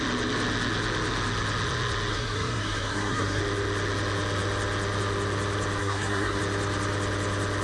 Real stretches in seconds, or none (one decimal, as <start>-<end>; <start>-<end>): 0.0-2.1; 3.4-5.8; 6.4-7.6